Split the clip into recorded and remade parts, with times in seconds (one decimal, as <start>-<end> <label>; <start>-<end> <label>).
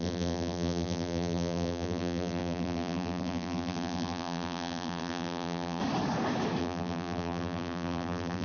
0.0-5.8 remade; 5.8-6.6 recorded; 6.6-8.4 remade